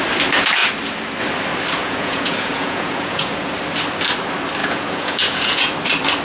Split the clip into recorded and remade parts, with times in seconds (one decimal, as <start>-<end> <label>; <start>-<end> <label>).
0.0-1.8 recorded; 1.8-3.5 remade; 3.5-4.6 recorded; 4.6-5.7 remade; 5.7-6.2 recorded